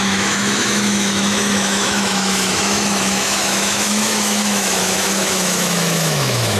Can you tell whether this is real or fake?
fake